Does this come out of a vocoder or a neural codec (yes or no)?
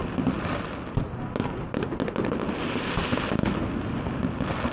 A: no